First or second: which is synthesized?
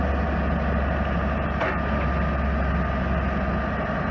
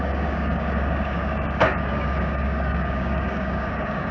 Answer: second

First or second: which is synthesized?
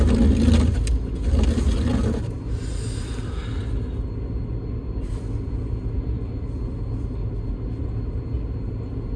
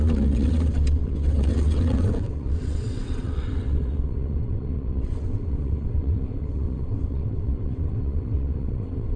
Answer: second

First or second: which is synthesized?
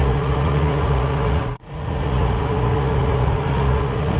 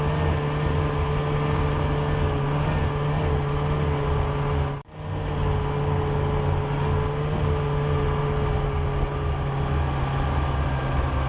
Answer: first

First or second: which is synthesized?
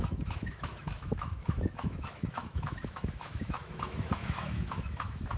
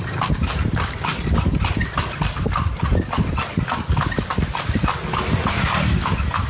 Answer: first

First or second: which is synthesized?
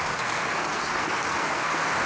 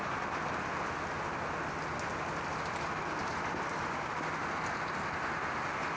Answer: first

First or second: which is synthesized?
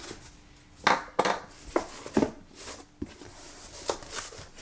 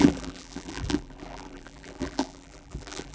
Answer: second